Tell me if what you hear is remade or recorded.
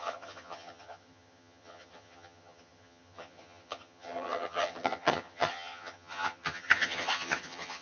remade